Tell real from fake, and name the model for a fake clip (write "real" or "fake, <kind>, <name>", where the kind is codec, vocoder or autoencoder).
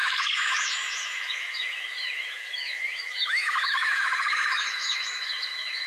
fake, autoencoder, DAC-VAE